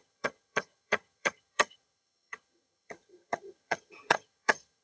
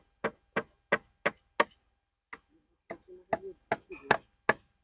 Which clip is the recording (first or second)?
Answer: second